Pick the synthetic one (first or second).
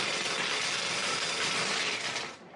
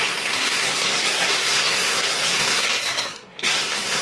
second